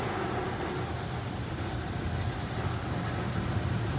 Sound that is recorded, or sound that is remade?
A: recorded